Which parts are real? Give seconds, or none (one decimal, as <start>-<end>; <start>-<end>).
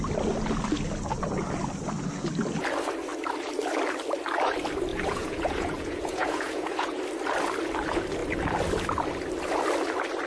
0.0-4.9; 7.0-10.3